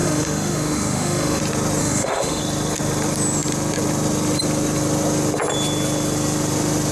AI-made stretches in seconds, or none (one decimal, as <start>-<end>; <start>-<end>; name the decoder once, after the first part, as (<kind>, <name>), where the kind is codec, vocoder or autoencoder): 0.0-1.4 (autoencoder, DAC-VAE); 1.8-2.4